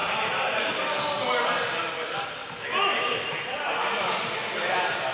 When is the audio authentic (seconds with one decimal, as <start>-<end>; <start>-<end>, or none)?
1.0-2.4; 4.3-5.1